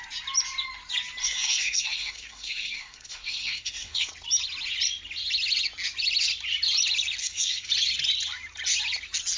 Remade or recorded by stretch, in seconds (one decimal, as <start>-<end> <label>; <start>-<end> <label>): 0.0-1.2 recorded; 1.2-4.1 remade; 4.1-7.2 recorded; 7.2-7.7 remade; 7.7-9.4 recorded